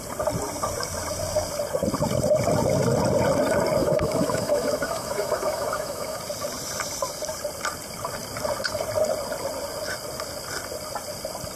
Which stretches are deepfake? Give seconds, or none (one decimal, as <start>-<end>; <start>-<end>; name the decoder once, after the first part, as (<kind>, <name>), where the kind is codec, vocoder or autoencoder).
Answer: 3.8-6.2 (autoencoder, DAC-VAE)